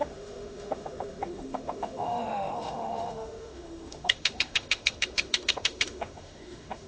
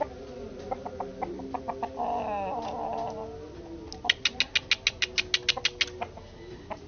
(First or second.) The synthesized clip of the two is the first